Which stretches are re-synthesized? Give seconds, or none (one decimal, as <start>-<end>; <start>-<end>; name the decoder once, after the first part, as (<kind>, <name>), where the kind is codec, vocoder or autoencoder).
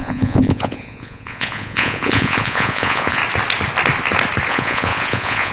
0.0-3.2 (vocoder, Vocos); 4.5-5.5